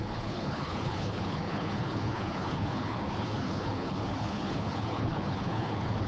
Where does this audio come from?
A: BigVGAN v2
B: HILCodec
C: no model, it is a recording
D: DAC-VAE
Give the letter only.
B